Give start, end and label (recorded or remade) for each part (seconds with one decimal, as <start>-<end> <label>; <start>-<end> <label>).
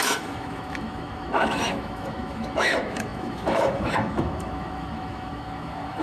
0.0-6.0 remade